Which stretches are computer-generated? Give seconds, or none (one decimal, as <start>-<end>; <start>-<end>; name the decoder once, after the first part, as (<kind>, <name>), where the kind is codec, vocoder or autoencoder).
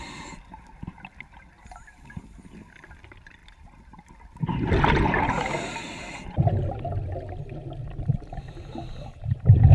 none